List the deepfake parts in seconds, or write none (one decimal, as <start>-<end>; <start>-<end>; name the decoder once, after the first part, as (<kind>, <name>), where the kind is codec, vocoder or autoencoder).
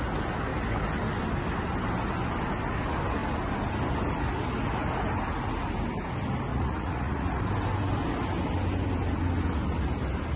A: 6.5-7.4 (vocoder, Vocos)